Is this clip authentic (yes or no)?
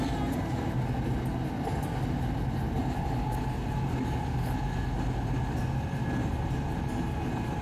yes